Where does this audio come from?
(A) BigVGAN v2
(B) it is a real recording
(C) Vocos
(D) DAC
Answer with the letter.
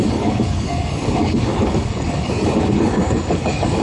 D